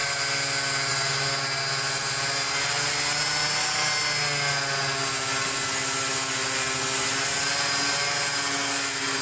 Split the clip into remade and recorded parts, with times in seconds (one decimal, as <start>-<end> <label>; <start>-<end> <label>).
0.0-9.2 recorded